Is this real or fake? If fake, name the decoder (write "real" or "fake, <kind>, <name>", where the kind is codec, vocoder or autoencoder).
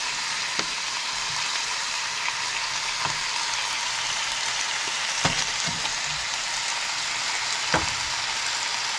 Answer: real